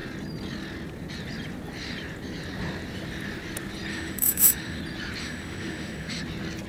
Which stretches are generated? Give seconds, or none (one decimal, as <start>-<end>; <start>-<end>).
3.9-4.8; 5.2-6.2